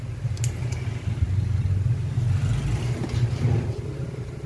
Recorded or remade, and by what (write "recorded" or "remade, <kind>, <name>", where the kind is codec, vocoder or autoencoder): recorded